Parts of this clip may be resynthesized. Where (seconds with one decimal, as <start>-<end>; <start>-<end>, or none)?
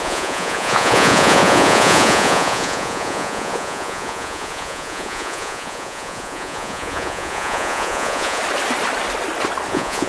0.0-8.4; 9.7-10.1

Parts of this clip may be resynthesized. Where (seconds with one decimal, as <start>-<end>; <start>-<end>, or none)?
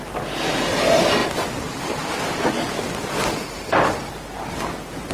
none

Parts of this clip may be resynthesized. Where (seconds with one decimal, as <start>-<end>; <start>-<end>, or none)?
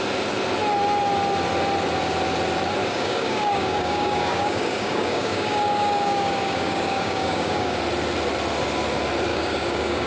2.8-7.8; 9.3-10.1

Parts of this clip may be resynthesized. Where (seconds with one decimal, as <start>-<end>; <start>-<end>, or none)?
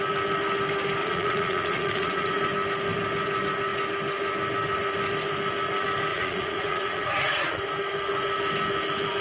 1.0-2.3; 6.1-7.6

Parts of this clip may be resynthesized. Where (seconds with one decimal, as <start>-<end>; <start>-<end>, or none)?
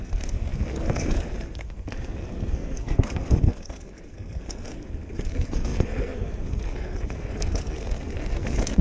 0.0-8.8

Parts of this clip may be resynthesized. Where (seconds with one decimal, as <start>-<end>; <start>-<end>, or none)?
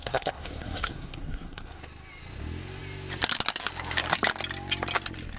0.0-1.8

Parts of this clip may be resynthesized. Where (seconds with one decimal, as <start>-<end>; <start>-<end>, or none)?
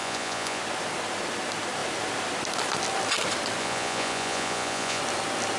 0.0-0.6; 3.6-5.0